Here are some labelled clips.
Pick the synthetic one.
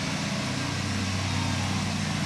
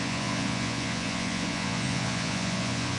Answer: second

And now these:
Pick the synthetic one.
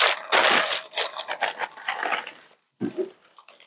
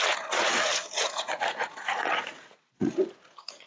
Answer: second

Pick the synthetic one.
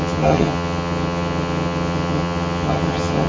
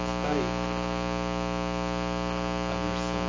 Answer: first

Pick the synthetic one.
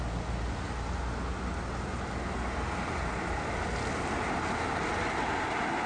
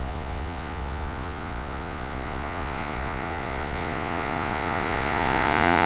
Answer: second